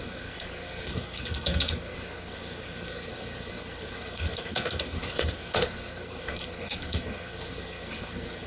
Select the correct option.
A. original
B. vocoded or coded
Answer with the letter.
B